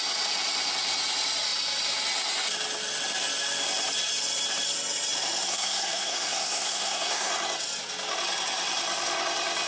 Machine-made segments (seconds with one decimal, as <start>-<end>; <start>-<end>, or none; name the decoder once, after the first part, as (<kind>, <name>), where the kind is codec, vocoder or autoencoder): 5.5-7.3 (codec, SNAC)